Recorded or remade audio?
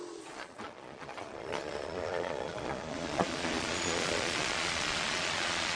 remade